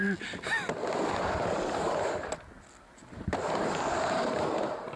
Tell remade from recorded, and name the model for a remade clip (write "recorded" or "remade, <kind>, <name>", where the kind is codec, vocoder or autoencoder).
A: recorded